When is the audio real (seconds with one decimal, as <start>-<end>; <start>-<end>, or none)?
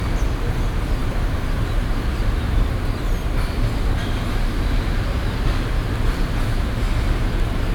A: 0.0-1.0; 3.1-7.7